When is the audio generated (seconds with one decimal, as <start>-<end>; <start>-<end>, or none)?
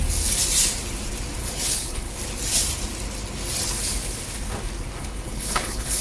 1.4-2.1; 5.0-6.0